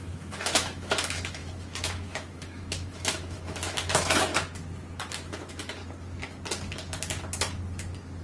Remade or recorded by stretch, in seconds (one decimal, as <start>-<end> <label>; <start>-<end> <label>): 0.0-4.3 remade; 4.3-5.1 recorded; 5.1-5.8 remade; 5.8-8.2 recorded